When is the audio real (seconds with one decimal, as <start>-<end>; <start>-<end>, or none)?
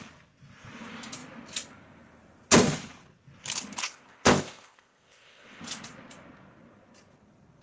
0.0-3.8; 5.6-7.6